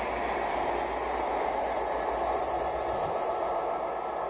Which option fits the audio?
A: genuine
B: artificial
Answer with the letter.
A